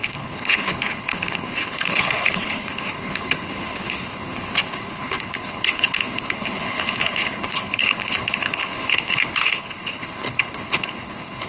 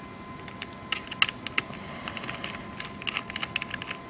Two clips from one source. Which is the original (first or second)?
second